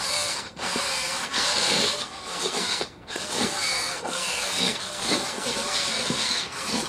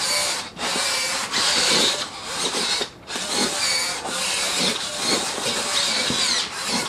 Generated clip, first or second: first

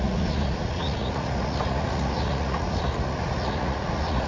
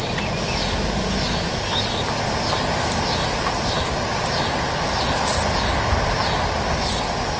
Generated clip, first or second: first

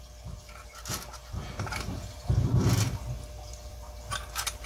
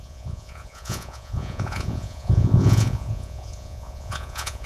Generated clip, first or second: second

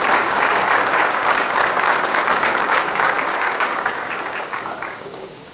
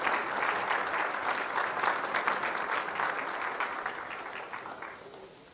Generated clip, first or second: first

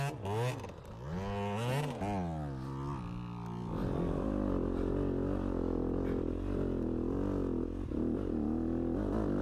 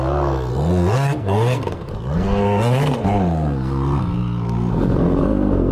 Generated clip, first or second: second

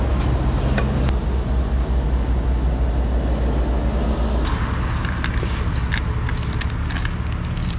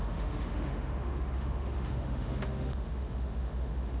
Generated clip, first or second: second